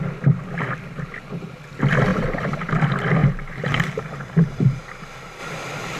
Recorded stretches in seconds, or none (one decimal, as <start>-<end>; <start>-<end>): 0.0-2.1; 2.7-3.2; 4.8-6.0